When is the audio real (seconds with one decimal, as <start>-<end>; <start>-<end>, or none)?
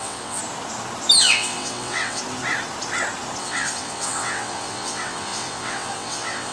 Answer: 0.4-1.2; 2.2-3.4